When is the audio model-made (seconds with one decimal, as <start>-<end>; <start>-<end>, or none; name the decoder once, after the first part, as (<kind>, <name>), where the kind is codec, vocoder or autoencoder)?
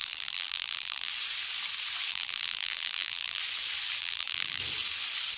0.0-1.1 (vocoder, BigVGAN v2); 2.1-3.4; 4.0-4.6